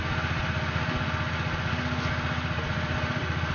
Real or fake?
real